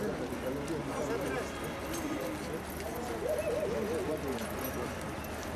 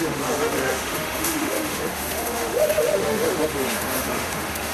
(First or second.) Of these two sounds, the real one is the first